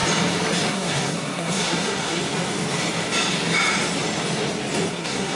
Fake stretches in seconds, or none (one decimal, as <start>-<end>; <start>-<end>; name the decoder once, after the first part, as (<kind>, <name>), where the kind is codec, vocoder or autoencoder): 0.7-2.2 (codec, SNAC); 4.9-5.4